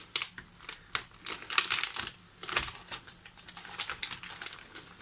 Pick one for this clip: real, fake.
real